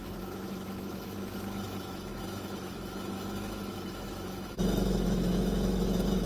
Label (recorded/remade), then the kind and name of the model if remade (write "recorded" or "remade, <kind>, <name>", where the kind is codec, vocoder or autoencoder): remade, autoencoder, DAC-VAE